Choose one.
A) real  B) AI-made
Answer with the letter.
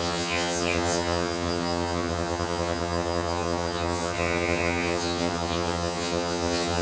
B